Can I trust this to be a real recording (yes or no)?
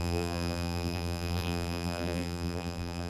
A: no